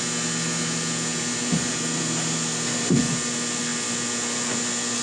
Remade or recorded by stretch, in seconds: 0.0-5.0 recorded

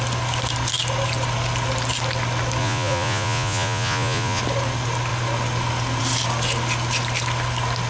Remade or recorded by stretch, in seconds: 0.0-2.6 recorded; 2.6-4.4 remade; 4.4-7.9 recorded